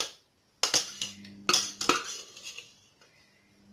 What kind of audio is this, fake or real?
real